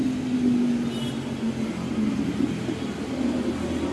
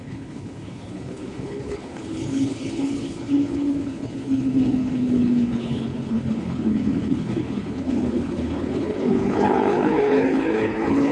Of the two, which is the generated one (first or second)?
second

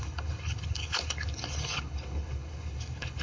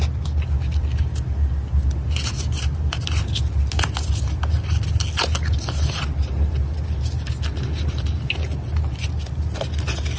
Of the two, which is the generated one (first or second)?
first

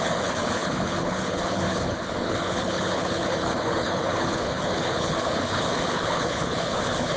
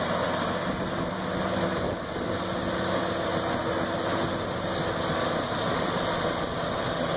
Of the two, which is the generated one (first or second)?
first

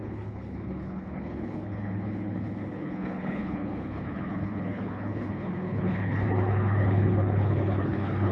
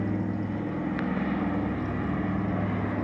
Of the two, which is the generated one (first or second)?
first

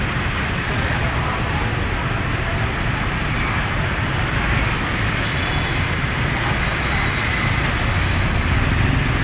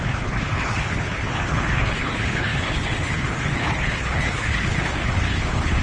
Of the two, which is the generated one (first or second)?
second